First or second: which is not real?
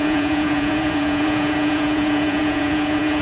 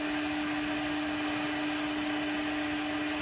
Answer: first